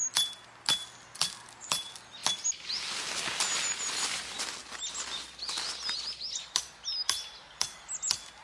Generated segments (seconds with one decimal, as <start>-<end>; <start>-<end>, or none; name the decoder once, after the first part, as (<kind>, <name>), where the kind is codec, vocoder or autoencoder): none